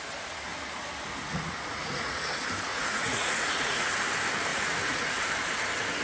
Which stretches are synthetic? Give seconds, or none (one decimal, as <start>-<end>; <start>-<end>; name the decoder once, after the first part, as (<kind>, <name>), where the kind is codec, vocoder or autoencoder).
1.2-2.3 (vocoder, Vocos); 2.7-3.9; 4.5-5.3